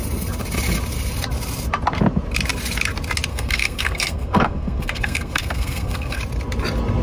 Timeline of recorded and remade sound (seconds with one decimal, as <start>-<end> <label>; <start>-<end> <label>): 0.0-3.3 recorded; 3.3-6.2 remade; 6.2-7.0 recorded